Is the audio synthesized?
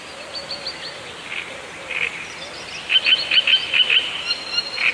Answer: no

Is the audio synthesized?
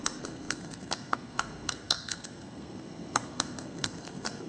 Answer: yes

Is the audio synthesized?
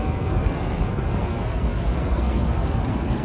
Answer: yes